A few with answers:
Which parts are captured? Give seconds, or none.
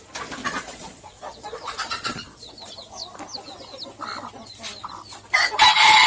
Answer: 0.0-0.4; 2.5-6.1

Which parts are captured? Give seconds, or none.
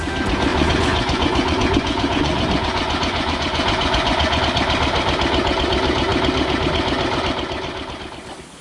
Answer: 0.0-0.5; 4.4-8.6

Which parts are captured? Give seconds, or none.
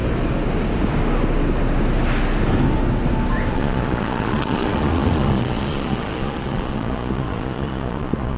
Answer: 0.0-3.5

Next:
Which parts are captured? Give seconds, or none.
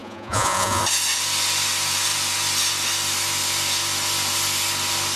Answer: 0.8-5.2